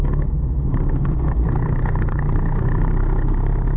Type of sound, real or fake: fake